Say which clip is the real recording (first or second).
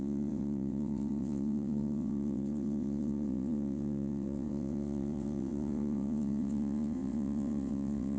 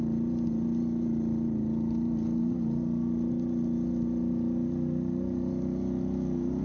second